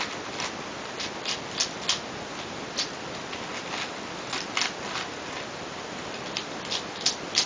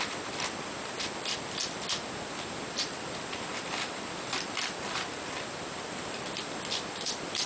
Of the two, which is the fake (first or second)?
second